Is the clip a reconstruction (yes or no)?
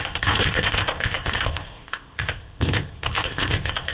yes